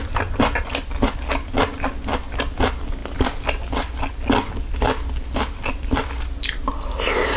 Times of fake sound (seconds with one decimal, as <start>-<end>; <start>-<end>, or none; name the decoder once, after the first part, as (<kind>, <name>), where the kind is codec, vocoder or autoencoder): none

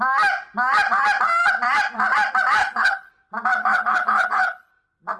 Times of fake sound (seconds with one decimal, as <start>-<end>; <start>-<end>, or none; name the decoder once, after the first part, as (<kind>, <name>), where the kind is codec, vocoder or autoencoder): 2.6-3.1 (codec, HILCodec); 3.6-4.7

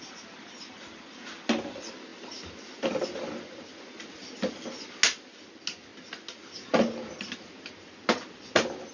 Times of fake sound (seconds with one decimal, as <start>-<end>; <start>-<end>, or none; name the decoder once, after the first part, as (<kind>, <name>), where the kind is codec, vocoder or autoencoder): none

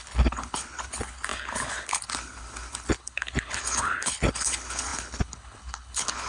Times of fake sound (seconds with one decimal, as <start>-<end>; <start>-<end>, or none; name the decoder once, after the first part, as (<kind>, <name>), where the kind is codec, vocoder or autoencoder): 0.0-6.3 (codec, HILCodec)

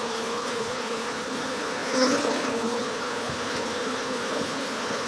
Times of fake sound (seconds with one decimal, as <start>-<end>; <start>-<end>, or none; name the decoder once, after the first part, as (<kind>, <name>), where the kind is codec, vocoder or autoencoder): 0.0-5.1 (codec, HILCodec)

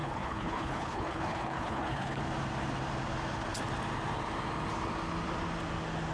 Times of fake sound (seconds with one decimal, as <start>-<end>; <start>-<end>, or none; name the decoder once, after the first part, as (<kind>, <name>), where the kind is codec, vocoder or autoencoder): 0.0-2.2 (codec, HILCodec)